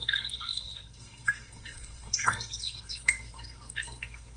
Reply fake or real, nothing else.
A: fake